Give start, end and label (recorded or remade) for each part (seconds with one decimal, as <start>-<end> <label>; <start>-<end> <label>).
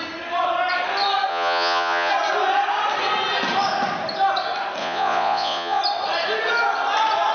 0.0-1.3 recorded; 1.3-2.1 remade; 2.1-4.8 recorded; 4.8-5.8 remade; 5.8-7.3 recorded